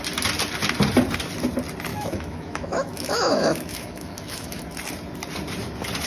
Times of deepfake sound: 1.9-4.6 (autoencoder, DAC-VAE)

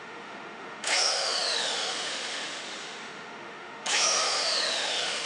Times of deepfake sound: 0.0-5.3 (autoencoder, DAC-VAE)

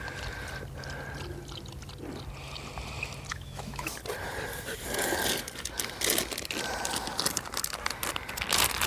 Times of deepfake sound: 3.3-3.9 (autoencoder, DAC-VAE)

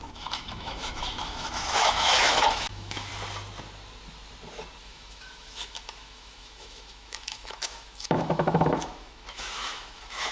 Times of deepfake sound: 0.0-3.1 (autoencoder, DAC-VAE); 4.8-10.3